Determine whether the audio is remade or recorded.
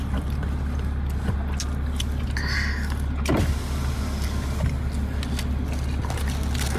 recorded